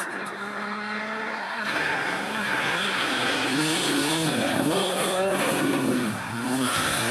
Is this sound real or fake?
fake